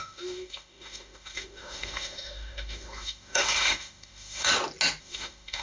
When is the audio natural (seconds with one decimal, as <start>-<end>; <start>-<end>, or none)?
4.5-5.0

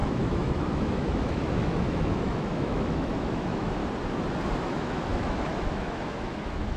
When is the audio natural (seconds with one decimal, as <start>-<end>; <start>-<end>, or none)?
3.8-4.6